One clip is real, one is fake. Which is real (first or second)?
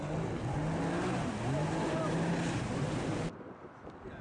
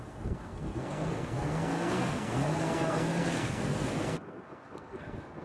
first